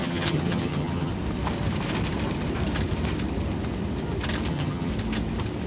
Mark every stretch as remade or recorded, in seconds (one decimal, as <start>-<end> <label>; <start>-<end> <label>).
0.0-1.1 remade; 1.1-4.5 recorded; 4.5-4.9 remade; 4.9-5.7 recorded